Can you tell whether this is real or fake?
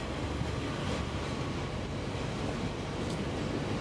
real